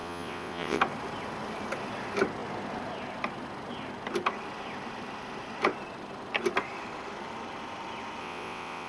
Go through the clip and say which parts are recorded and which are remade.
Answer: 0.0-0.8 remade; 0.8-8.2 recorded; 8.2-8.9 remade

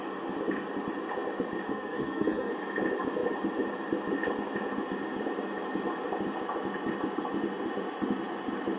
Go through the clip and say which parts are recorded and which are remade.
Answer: 0.0-1.7 recorded; 1.7-2.5 remade; 2.5-8.8 recorded

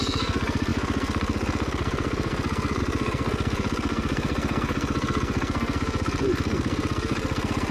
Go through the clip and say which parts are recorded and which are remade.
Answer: 0.0-7.7 remade

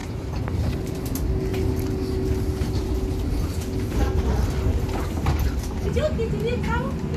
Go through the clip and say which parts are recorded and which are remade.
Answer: 0.0-7.2 recorded

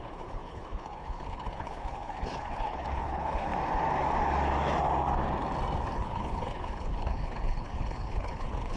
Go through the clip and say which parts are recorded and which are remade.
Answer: 0.0-3.5 remade; 3.5-6.0 recorded; 6.0-8.8 remade

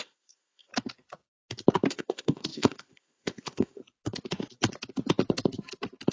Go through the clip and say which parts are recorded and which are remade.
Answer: 0.0-0.7 remade; 0.7-1.9 recorded; 1.9-3.8 remade; 3.8-6.1 recorded